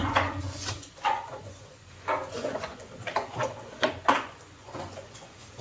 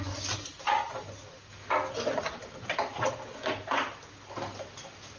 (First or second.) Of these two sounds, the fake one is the first